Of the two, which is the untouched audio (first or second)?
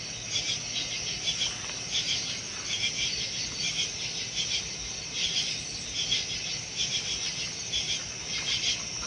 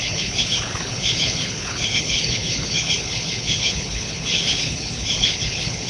first